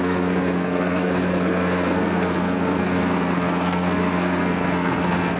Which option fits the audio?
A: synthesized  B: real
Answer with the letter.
A